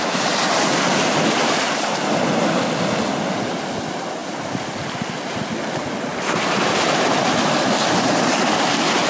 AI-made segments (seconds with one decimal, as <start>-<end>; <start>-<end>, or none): none